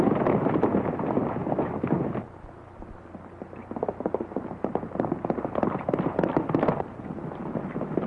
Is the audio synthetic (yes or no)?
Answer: no